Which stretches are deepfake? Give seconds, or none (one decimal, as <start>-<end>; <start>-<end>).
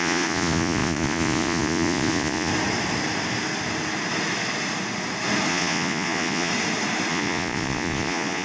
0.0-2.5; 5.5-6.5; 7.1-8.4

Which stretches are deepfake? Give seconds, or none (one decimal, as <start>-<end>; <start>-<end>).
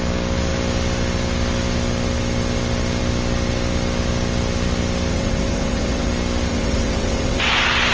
5.1-6.1; 6.5-7.5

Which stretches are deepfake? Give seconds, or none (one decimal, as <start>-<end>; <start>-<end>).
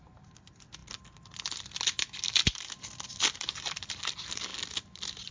none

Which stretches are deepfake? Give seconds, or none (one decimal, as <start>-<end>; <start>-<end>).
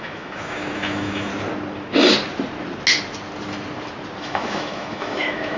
0.0-1.3; 4.2-5.6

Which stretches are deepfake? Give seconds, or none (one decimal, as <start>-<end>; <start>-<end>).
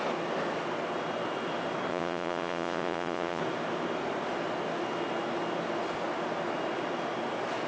1.9-3.4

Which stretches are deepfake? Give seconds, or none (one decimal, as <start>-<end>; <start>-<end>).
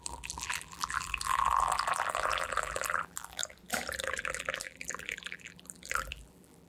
0.0-3.4; 4.2-6.7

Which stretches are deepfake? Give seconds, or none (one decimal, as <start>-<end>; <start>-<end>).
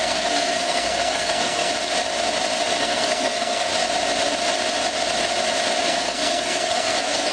0.0-1.7; 2.8-3.7; 5.8-7.3